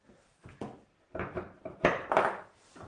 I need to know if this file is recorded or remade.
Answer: recorded